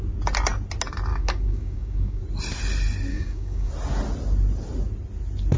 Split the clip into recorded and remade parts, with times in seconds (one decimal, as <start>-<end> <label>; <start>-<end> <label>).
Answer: 0.0-1.1 recorded; 1.1-2.2 remade; 2.2-3.1 recorded; 3.1-3.7 remade; 3.7-5.6 recorded